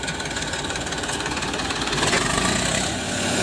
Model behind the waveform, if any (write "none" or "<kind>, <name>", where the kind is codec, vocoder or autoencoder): vocoder, Vocos